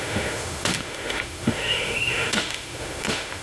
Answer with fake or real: fake